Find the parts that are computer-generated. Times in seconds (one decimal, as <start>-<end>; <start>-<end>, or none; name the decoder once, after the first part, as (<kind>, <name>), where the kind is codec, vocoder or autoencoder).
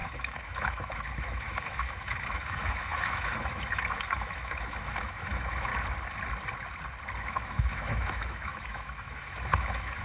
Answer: 0.0-5.7 (autoencoder, DAC-VAE); 7.2-10.0